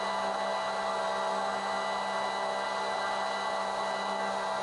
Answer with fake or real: real